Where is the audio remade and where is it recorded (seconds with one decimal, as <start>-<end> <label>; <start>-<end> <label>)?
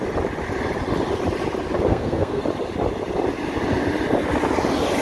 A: 0.0-1.9 recorded; 1.9-2.4 remade; 2.4-5.0 recorded